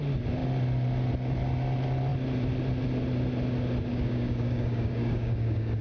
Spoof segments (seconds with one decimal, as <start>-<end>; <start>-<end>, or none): 3.9-5.8